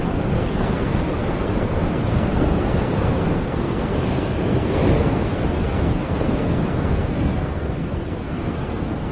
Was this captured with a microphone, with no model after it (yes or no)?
no